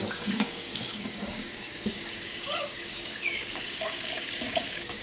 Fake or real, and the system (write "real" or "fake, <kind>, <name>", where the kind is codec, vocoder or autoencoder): fake, codec, DAC